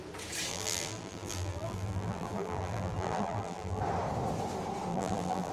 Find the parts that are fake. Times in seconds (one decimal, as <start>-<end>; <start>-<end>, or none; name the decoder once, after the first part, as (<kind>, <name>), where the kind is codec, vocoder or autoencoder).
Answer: 0.5-3.8 (vocoder, BigVGAN v2); 4.9-5.5